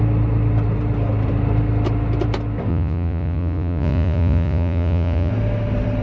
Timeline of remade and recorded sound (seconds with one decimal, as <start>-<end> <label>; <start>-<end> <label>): 0.0-2.7 recorded; 2.7-5.3 remade; 5.3-6.0 recorded